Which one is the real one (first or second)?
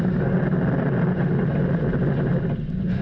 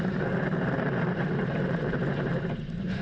first